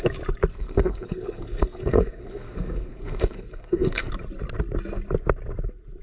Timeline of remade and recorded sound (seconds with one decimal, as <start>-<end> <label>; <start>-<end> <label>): 0.0-0.5 recorded; 0.5-4.1 remade; 4.1-6.0 recorded